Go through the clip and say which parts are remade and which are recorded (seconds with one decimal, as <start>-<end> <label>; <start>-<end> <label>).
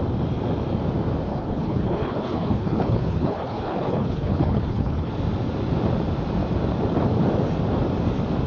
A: 0.0-1.3 recorded; 1.3-5.1 remade; 5.1-8.5 recorded